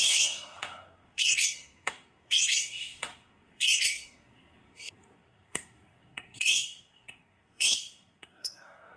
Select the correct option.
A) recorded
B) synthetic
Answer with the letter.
B